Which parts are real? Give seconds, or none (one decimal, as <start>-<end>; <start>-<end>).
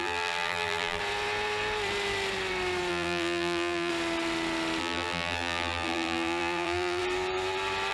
1.0-2.9; 3.9-4.8; 7.0-7.9